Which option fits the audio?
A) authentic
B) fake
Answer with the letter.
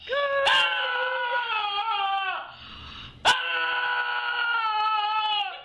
A